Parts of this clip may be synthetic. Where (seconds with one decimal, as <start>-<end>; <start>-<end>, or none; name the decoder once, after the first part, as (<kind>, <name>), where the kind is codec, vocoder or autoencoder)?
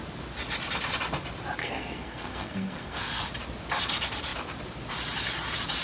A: 1.6-3.2 (codec, SNAC)